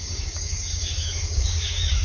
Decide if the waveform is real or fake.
fake